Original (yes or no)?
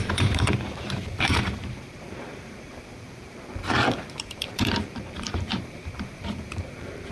no